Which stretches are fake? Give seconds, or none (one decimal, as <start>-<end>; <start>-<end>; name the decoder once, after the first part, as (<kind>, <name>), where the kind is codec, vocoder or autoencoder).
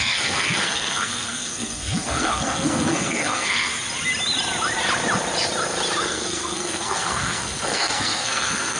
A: 0.0-3.7 (codec, SNAC); 6.0-8.8